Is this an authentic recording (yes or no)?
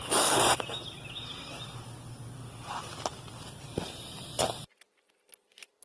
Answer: yes